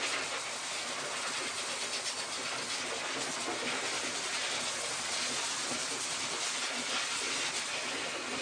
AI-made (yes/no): no